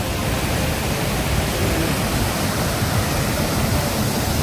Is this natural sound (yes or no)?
yes